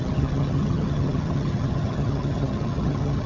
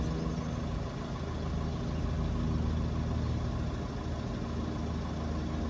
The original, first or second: second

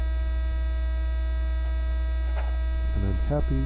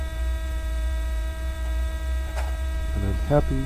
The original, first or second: first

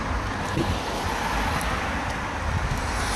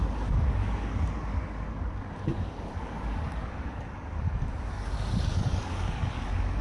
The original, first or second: first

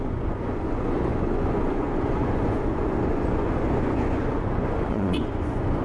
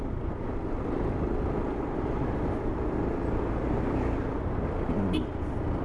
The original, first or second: second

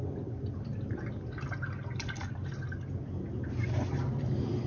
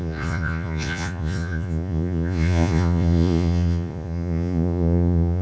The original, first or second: first